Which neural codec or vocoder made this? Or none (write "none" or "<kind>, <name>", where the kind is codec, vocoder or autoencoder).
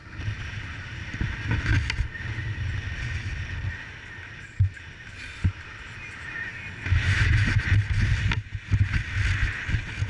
none